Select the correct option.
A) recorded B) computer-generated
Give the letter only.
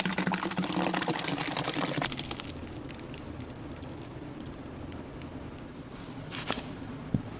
A